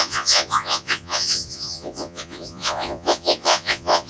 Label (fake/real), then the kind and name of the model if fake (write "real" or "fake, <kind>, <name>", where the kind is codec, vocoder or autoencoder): fake, vocoder, Vocos